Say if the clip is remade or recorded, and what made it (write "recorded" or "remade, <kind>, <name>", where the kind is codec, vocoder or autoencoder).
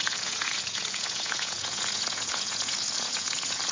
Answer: remade, vocoder, Vocos